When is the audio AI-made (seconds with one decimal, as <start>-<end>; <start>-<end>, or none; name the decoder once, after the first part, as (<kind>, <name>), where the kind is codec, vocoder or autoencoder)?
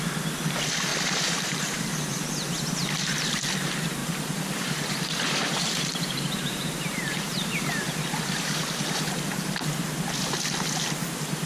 0.9-1.8 (vocoder, BigVGAN v2); 4.0-9.1